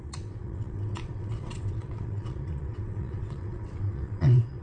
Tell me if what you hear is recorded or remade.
remade